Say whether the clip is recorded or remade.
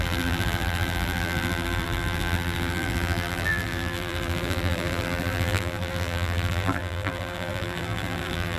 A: remade